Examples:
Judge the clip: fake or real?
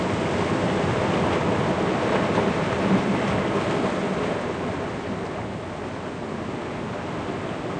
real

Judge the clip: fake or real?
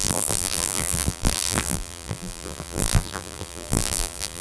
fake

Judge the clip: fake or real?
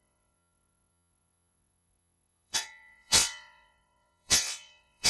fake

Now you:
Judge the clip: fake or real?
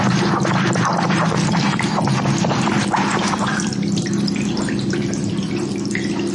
fake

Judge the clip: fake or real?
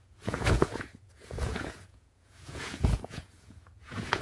fake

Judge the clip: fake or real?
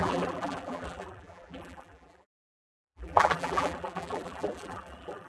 fake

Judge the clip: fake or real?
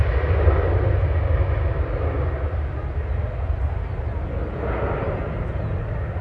real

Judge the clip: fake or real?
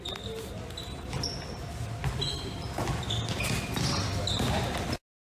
real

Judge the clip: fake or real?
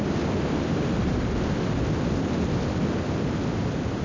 real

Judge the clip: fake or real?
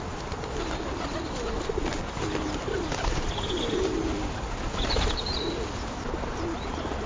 real